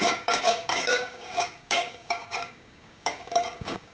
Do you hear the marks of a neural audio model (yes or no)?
yes